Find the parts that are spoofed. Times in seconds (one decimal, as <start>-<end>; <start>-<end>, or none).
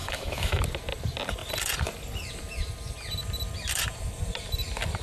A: 0.0-0.6